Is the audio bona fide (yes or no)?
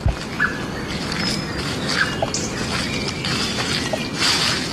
yes